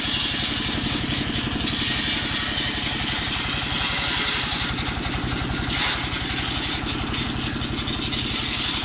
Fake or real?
real